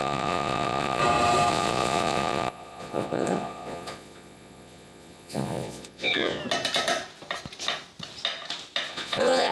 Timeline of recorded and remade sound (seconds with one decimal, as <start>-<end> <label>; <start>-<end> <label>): 0.0-1.0 remade; 1.0-1.5 recorded; 1.5-6.4 remade; 6.4-8.9 recorded; 8.9-9.5 remade